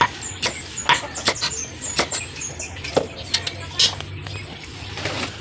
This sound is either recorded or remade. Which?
recorded